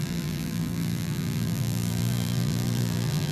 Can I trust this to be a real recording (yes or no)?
no